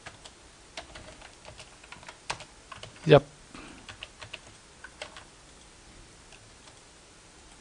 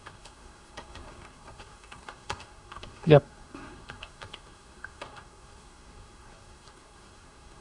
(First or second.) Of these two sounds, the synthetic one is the second